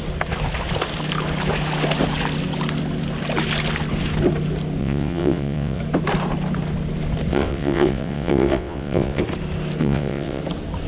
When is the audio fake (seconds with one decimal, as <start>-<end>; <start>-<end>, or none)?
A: 4.8-5.8; 7.3-9.2; 9.8-10.4